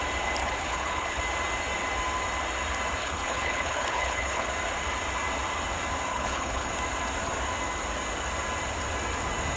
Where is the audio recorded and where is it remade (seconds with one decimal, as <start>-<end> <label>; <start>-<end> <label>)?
0.0-0.4 recorded; 0.4-1.2 remade; 1.2-3.0 recorded; 3.0-4.5 remade; 4.5-6.1 recorded; 6.1-6.7 remade; 6.7-9.6 recorded